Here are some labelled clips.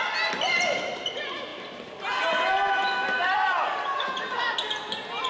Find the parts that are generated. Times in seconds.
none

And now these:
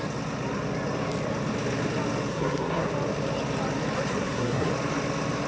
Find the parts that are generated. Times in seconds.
2.3-2.9 (codec, SNAC); 4.2-4.7